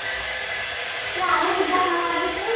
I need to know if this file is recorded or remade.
remade